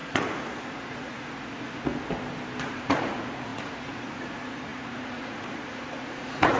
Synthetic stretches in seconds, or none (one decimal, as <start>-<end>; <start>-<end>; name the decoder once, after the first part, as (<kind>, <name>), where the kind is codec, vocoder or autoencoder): 0.0-1.9 (vocoder, Vocos); 2.6-6.6